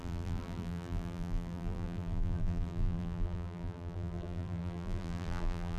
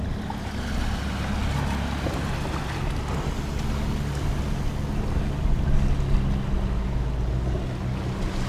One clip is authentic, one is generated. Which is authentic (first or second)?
second